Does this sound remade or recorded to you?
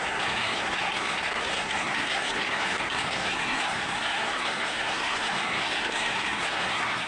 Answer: remade